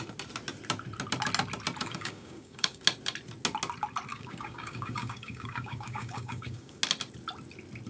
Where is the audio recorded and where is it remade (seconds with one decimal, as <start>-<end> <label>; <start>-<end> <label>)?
0.0-1.8 recorded; 1.8-2.8 remade; 2.8-4.1 recorded; 4.1-6.8 remade; 6.8-7.9 recorded

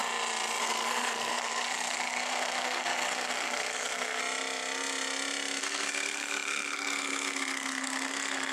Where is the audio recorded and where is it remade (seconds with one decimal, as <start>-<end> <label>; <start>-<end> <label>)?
0.0-0.6 recorded; 0.6-4.2 remade; 4.2-5.6 recorded; 5.6-8.5 remade

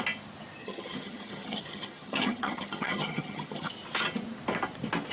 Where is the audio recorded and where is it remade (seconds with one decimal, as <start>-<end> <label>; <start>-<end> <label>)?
0.0-0.6 recorded; 0.6-3.7 remade; 3.7-5.1 recorded

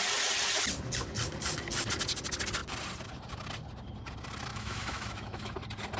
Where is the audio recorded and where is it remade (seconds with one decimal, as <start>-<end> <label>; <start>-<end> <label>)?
0.0-4.5 recorded; 4.5-5.5 remade; 5.5-6.0 recorded

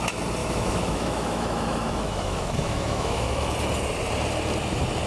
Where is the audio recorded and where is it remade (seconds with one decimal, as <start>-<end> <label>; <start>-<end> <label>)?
0.0-0.4 recorded; 0.4-3.5 remade; 3.5-5.1 recorded

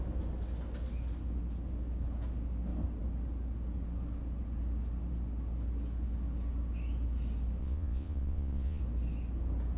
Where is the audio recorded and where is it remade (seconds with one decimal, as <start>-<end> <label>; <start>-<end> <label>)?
0.0-7.6 recorded; 7.6-8.8 remade; 8.8-9.8 recorded

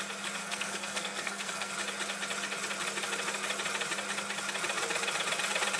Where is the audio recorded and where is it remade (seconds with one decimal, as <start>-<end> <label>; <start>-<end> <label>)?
0.0-0.4 recorded; 0.4-1.7 remade; 1.7-5.8 recorded